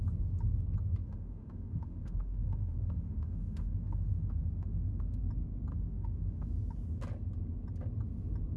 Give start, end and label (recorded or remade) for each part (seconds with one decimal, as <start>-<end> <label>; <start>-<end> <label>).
0.0-1.0 recorded; 1.0-5.3 remade; 5.3-5.7 recorded; 5.7-6.5 remade; 6.5-8.6 recorded